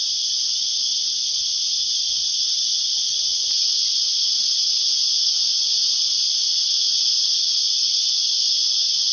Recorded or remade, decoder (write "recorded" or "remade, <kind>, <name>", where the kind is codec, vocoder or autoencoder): recorded